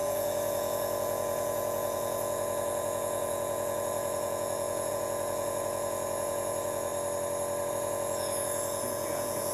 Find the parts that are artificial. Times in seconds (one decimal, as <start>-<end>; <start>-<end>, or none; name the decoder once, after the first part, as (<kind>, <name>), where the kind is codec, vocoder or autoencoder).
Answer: 0.0-6.9 (vocoder, Vocos); 7.7-9.5